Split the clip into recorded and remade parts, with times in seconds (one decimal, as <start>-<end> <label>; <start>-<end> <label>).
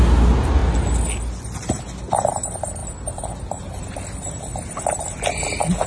0.0-5.9 recorded